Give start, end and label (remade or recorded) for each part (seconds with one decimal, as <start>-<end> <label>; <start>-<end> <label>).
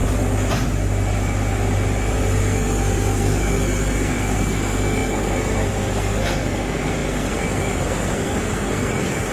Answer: 0.0-2.4 recorded; 2.4-9.3 remade